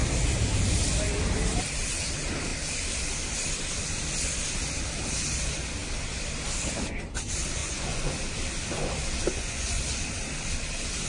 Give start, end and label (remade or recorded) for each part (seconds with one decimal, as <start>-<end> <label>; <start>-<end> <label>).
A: 0.0-7.6 recorded; 7.6-8.1 remade; 8.1-9.3 recorded; 9.3-9.8 remade; 9.8-11.1 recorded